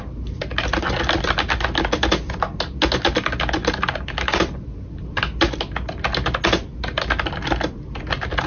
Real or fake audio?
real